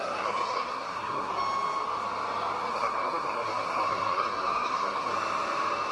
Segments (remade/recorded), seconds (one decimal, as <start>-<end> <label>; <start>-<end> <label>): 0.0-1.3 remade; 1.3-2.7 recorded; 2.7-5.1 remade; 5.1-5.9 recorded

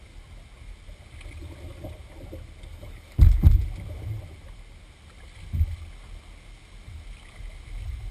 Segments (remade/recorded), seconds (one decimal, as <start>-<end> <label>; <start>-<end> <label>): 0.0-2.7 recorded; 2.7-3.5 remade; 3.5-8.1 recorded

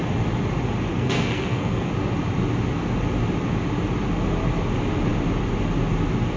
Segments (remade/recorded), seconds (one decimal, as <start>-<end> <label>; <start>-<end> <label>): 0.0-0.9 recorded; 0.9-1.9 remade; 1.9-6.4 recorded

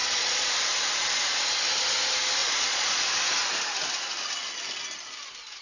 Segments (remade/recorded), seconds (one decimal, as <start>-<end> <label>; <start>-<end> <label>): 0.0-0.5 remade; 0.5-2.4 recorded; 2.4-3.0 remade; 3.0-5.6 recorded

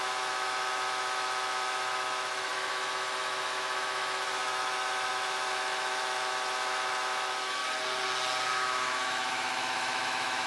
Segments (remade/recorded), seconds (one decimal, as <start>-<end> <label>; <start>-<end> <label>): 0.0-7.6 remade; 7.6-8.5 recorded; 8.5-10.5 remade

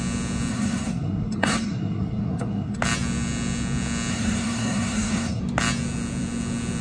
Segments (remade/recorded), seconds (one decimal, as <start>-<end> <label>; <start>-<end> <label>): 0.0-0.5 recorded; 0.5-2.8 remade; 2.8-4.1 recorded; 4.1-5.4 remade; 5.4-6.8 recorded

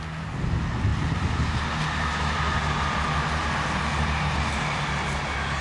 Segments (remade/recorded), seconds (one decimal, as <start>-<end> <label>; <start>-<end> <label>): 0.0-5.6 recorded